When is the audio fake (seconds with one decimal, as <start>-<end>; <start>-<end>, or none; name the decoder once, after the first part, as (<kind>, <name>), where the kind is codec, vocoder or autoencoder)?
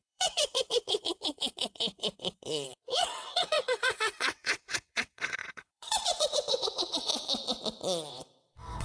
0.0-7.1 (vocoder, WaveNeXt); 8.1-8.8